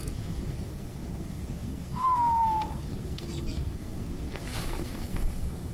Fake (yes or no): yes